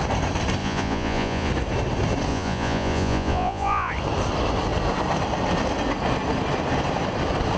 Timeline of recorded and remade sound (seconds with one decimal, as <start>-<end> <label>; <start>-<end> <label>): 0.0-0.6 recorded; 0.6-1.5 remade; 1.5-2.3 recorded; 2.3-3.9 remade; 3.9-7.6 recorded